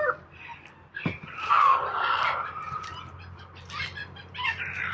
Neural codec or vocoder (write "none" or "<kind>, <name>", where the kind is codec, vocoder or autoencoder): none